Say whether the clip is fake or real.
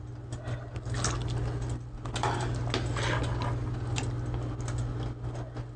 real